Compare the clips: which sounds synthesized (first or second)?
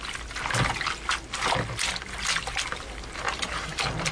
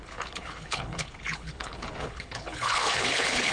second